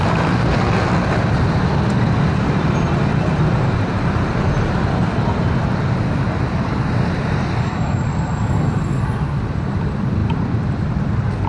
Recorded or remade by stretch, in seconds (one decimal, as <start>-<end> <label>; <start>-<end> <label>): 0.0-11.5 remade